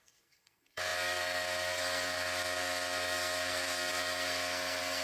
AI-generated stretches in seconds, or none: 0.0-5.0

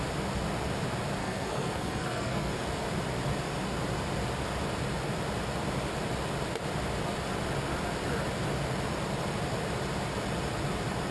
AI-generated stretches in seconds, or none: 1.2-2.5

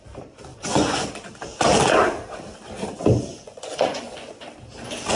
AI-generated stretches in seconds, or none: 0.5-1.1; 3.3-4.4

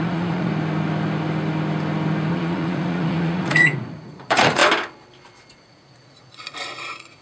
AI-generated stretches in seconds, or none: 0.0-0.5; 2.3-4.6; 5.6-7.2